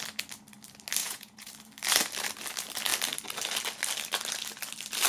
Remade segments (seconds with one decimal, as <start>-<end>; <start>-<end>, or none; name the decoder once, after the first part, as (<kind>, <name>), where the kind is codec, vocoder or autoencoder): 1.0-1.5 (vocoder, Vocos)